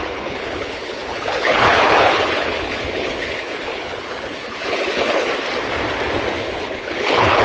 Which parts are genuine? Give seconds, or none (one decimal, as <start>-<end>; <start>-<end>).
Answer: 5.3-6.4